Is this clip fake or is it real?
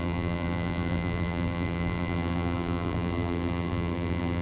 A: fake